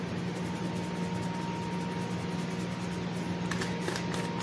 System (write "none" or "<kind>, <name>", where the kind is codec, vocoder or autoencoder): none